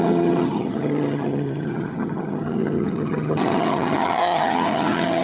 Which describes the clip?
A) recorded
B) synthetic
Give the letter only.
B